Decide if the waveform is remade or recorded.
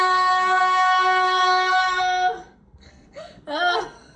remade